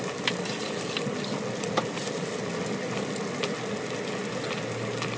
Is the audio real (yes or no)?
yes